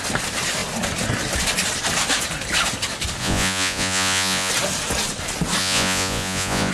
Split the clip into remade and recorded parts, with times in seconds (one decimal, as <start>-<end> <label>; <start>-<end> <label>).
0.0-3.2 recorded; 3.2-4.5 remade; 4.5-5.6 recorded; 5.6-6.7 remade